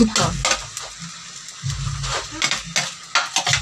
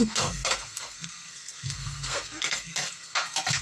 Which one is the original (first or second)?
first